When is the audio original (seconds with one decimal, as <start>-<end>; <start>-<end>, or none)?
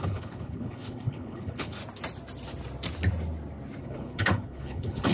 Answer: 1.8-3.8